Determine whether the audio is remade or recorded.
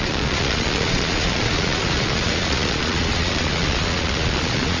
remade